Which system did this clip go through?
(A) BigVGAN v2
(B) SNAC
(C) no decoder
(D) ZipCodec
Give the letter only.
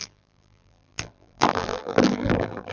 A